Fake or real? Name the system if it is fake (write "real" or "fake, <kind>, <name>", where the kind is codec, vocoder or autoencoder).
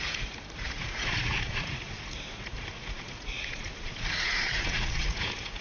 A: fake, vocoder, Vocos